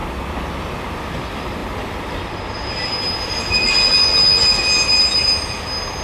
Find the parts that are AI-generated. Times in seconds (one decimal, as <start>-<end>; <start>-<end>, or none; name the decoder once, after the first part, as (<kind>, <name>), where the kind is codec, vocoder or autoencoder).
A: none